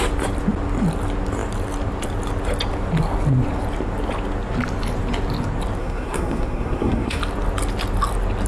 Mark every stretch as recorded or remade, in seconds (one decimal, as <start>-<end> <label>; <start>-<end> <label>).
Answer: 0.0-5.8 recorded; 5.8-7.2 remade; 7.2-8.5 recorded